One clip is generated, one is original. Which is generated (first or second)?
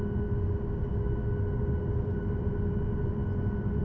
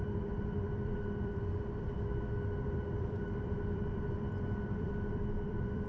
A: second